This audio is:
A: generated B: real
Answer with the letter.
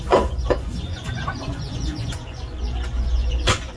A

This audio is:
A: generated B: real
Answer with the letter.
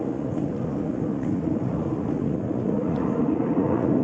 A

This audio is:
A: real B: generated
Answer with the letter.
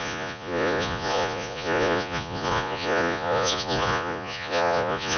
B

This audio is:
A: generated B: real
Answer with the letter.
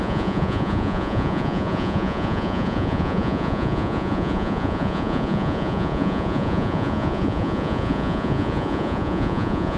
A